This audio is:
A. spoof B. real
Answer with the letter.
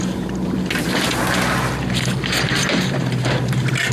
B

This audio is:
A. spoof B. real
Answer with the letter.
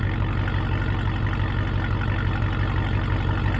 B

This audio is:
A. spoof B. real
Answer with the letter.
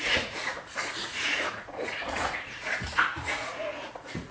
A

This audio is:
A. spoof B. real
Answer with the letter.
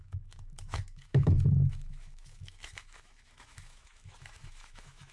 A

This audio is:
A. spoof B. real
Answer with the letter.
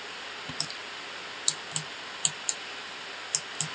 B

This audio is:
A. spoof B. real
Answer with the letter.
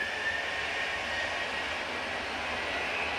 B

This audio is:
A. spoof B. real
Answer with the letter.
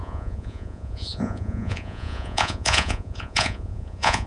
A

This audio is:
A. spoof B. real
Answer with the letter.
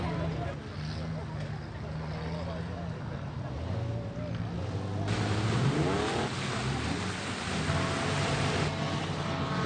B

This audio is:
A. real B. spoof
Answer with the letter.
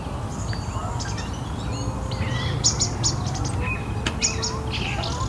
A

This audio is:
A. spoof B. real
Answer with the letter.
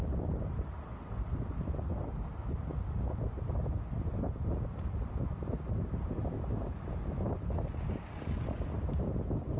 B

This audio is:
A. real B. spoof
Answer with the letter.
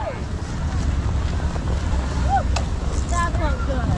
A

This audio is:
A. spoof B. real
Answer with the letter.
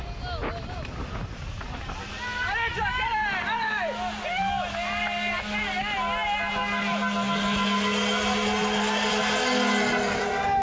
B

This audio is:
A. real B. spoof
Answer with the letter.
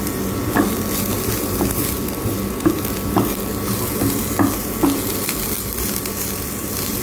A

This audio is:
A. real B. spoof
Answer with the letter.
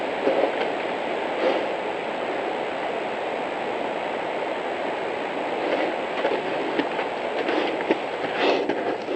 A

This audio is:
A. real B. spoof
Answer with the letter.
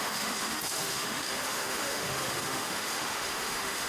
B